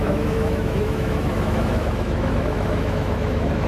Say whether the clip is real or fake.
fake